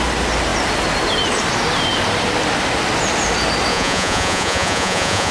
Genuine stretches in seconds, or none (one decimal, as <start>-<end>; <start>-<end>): 0.0-3.7